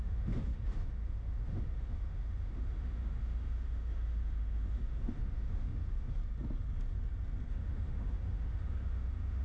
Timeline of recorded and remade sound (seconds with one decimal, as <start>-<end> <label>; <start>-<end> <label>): 0.0-6.2 remade; 6.2-7.5 recorded; 7.5-9.4 remade